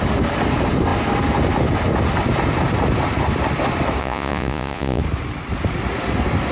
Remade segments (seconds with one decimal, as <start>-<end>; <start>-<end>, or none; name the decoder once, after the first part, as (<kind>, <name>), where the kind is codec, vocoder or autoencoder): 4.0-5.0 (vocoder, Vocos)